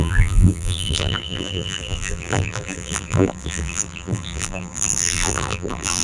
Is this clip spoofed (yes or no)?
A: yes